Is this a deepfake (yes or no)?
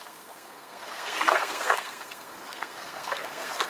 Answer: yes